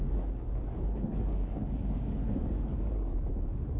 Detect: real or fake fake